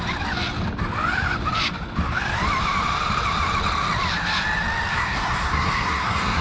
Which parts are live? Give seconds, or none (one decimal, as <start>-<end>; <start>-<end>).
0.0-4.9